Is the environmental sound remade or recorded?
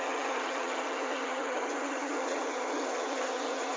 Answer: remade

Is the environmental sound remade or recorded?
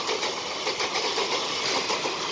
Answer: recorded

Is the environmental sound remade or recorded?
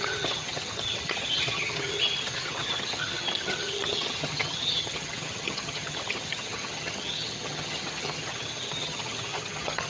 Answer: remade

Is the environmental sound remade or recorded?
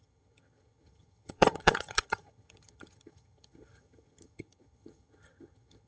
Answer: remade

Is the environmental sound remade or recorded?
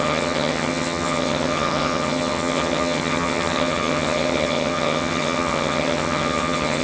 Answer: remade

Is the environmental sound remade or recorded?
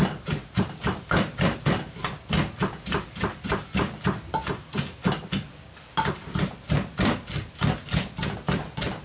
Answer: recorded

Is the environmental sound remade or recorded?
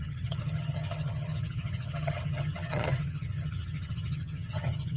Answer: remade